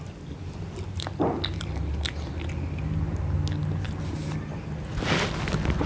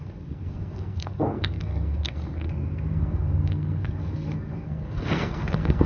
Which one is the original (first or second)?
first